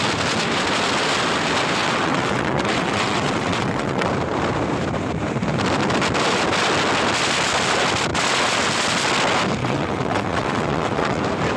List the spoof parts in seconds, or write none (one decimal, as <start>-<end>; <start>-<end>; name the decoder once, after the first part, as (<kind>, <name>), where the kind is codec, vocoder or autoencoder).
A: 1.8-4.1 (vocoder, WaveNeXt); 9.6-11.2